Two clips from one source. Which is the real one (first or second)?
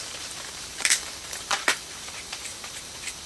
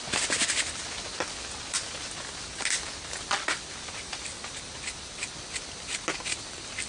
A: second